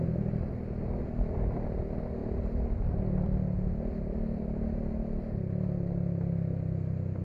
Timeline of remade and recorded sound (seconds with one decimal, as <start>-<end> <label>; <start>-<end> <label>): 0.0-2.2 recorded; 2.2-5.2 remade; 5.2-7.2 recorded